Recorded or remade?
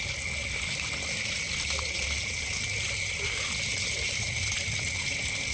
recorded